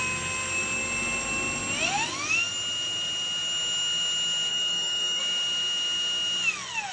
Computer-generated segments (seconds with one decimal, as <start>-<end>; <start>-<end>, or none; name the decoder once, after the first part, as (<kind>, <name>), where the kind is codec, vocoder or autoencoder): 4.5-5.2 (codec, DAC)